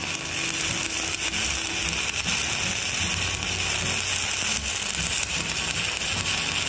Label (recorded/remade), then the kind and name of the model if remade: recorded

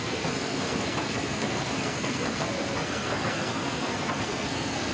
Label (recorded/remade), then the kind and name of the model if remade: remade, codec, SNAC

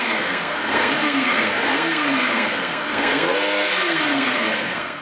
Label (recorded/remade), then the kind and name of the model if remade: remade, codec, SNAC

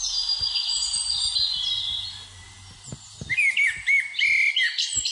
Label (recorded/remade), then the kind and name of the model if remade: recorded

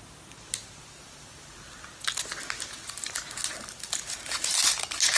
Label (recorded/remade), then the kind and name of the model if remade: recorded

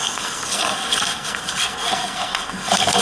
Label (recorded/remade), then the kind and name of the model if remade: remade, codec, SNAC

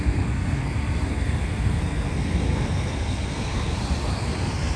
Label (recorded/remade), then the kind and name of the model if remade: remade, codec, SNAC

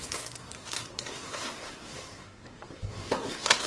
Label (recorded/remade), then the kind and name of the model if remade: remade, codec, SNAC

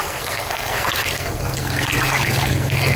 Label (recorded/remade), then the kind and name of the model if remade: remade, codec, SNAC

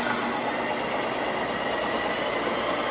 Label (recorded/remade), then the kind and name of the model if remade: recorded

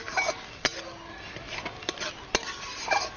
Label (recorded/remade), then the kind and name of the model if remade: recorded